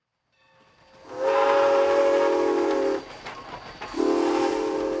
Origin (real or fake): real